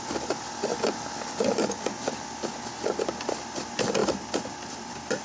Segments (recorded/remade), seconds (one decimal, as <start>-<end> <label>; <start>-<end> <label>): 0.0-0.7 remade; 0.7-3.3 recorded; 3.3-5.2 remade